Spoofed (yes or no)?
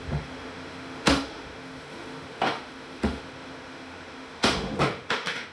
yes